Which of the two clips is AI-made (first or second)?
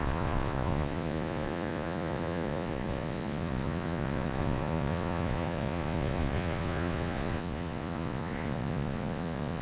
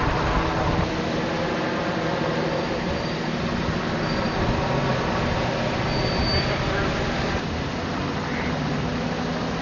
first